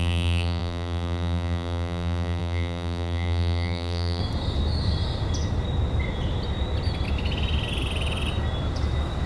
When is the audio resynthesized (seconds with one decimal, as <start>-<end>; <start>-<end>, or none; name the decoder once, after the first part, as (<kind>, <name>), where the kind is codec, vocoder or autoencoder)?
0.0-4.2 (vocoder, BigVGAN v2)